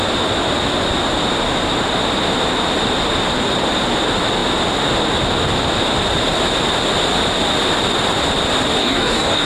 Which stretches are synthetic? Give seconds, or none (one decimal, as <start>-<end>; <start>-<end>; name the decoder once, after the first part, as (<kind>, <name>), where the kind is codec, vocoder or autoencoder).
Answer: 8.8-9.5 (codec, DAC)